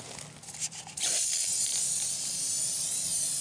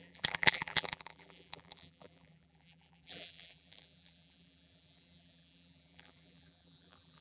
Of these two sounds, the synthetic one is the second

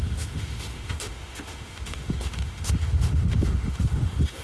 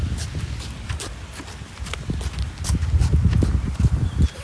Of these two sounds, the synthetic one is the first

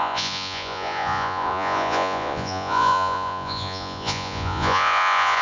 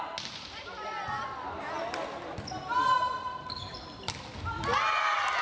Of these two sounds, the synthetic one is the first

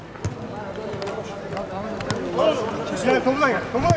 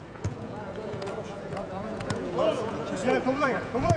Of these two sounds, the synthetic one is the second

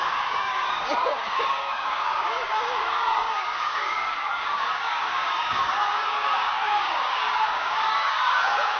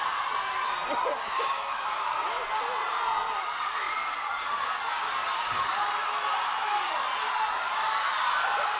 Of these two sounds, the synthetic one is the first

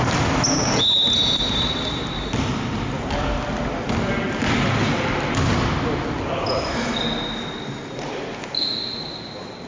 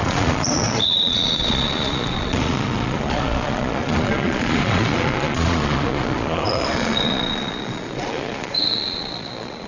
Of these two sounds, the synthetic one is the second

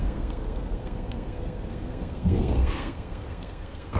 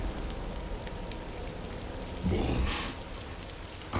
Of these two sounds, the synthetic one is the first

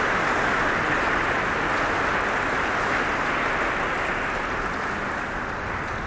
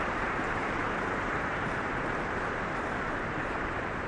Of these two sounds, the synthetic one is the second